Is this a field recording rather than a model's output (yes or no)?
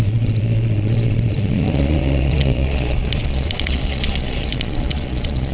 no